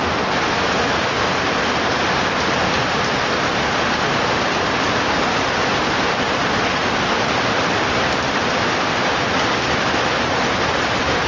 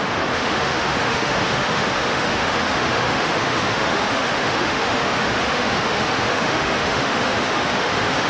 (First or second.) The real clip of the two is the first